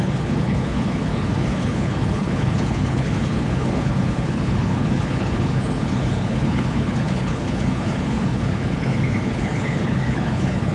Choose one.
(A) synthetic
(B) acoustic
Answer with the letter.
A